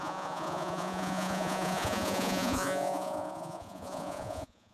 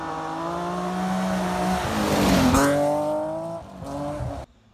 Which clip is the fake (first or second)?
first